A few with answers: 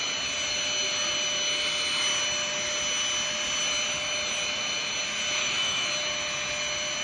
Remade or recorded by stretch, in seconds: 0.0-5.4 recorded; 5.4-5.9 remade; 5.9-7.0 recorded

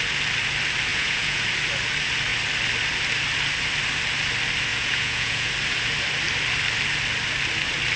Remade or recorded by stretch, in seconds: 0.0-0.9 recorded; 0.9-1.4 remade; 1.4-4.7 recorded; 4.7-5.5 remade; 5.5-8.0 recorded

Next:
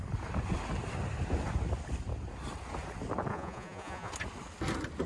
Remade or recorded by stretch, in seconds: 0.0-3.3 recorded; 3.3-4.1 remade; 4.1-5.1 recorded